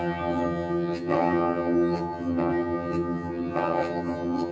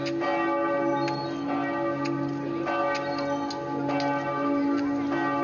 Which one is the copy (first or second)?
first